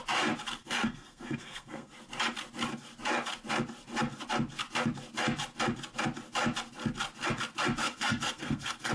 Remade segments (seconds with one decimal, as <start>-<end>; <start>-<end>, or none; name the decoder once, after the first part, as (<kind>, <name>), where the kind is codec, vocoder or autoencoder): 0.6-1.9 (codec, SNAC); 7.8-8.9